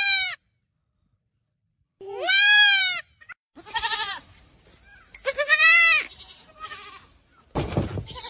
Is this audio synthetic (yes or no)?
yes